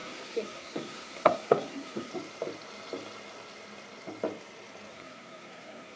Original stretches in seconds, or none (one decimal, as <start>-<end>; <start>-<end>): 2.1-4.9